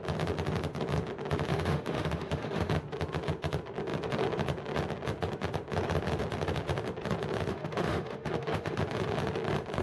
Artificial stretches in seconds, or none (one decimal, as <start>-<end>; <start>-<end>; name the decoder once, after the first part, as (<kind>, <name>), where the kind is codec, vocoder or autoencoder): 1.5-2.7 (autoencoder, DAC-VAE); 7.5-8.8